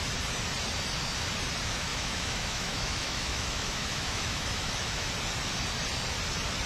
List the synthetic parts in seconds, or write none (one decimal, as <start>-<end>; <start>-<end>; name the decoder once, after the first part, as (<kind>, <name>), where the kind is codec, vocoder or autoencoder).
1.9-5.1 (autoencoder, DAC-VAE)